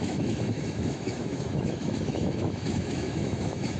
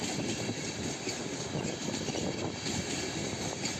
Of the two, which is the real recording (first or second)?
second